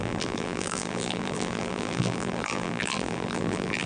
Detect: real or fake fake